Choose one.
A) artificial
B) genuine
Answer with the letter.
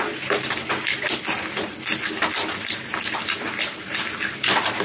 B